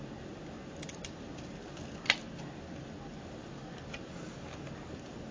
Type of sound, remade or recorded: recorded